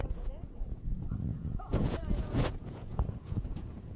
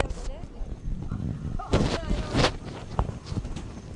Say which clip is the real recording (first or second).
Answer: second